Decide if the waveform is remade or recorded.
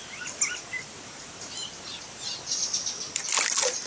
recorded